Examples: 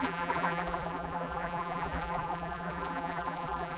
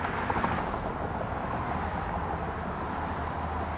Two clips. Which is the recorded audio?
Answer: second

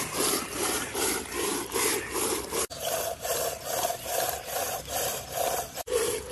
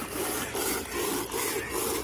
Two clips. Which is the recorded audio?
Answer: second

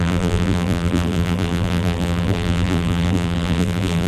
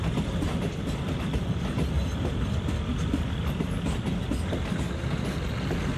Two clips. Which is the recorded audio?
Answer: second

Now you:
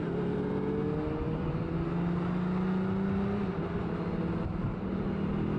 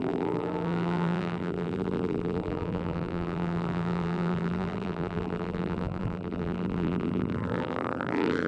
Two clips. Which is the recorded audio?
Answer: first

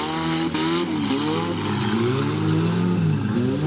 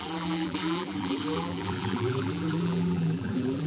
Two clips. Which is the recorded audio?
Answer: first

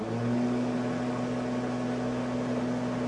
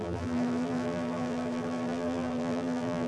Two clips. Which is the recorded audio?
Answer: first